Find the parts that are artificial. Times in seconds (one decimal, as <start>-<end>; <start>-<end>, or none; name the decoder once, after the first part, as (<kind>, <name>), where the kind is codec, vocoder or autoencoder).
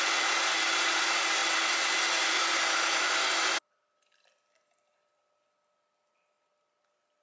none